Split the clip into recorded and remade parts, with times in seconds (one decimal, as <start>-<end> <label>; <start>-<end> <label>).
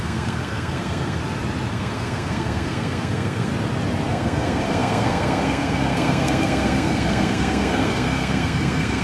0.0-1.2 remade; 1.2-1.7 recorded; 1.7-3.5 remade; 3.5-4.1 recorded; 4.1-9.0 remade